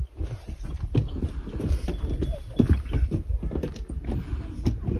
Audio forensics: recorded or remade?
recorded